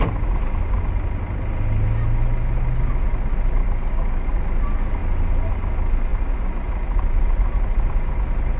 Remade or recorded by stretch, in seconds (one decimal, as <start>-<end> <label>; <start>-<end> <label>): 0.0-3.6 recorded; 3.6-4.4 remade; 4.4-8.6 recorded